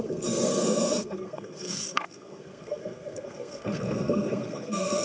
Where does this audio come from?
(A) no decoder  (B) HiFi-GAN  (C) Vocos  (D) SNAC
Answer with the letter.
D